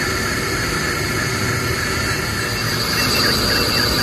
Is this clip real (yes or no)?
yes